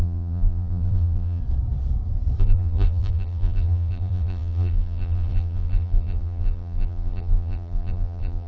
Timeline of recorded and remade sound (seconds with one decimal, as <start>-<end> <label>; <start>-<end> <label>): 0.0-1.4 remade; 1.4-2.4 recorded; 2.4-8.5 remade